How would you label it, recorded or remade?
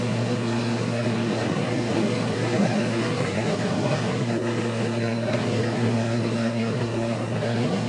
remade